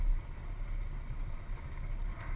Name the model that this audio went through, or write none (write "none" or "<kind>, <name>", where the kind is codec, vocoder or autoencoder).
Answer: none